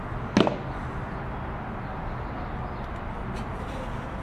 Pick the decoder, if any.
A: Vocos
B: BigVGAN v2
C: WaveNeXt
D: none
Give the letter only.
D